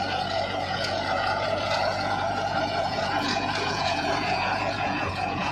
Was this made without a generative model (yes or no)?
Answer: no